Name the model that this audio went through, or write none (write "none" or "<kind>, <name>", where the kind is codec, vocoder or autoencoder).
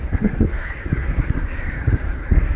codec, SNAC